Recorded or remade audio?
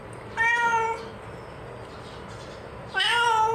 recorded